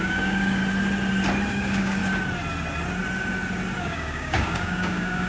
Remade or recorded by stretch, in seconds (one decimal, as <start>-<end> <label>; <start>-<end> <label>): 0.0-0.6 remade; 0.6-1.5 recorded; 1.5-2.0 remade; 2.0-3.8 recorded; 3.8-5.3 remade